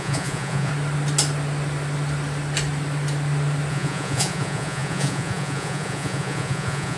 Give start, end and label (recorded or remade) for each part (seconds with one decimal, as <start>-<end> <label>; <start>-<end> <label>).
0.0-0.7 remade; 0.7-3.7 recorded; 3.7-7.0 remade